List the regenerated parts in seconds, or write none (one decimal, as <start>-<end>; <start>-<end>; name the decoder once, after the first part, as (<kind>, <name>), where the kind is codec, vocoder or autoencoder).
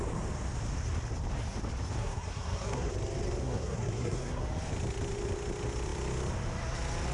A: 2.0-2.9 (codec, SNAC); 3.4-4.4